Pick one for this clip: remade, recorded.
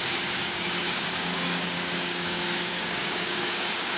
remade